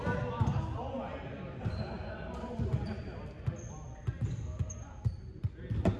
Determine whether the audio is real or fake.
real